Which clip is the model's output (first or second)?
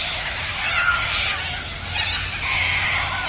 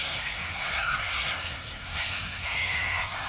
second